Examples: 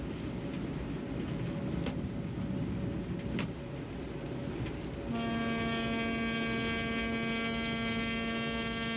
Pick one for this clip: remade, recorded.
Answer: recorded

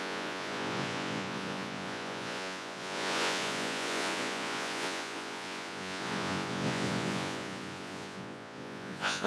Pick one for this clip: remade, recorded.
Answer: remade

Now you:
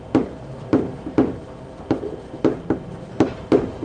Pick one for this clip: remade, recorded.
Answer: recorded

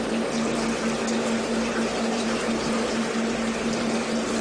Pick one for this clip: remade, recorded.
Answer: recorded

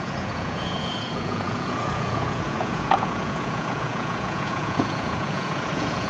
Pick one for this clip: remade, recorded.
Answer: remade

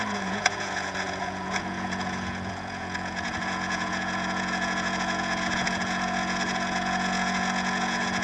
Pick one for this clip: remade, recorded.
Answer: remade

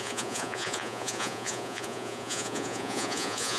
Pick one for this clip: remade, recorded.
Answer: remade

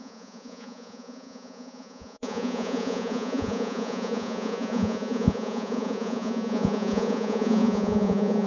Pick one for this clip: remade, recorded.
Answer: remade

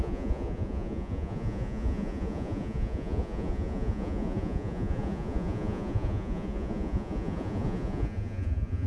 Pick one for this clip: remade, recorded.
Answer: remade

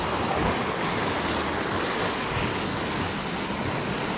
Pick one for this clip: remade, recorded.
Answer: recorded